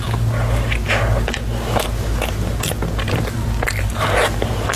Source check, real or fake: real